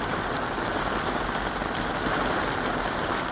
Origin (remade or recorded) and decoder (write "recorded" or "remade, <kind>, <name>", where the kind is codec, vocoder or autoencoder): recorded